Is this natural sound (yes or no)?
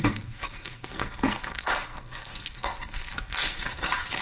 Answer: no